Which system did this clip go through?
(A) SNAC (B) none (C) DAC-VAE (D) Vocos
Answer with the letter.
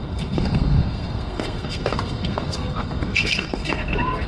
A